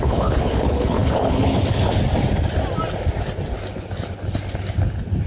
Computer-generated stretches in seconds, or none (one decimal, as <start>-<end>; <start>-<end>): 0.0-2.0